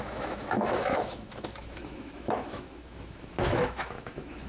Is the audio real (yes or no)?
no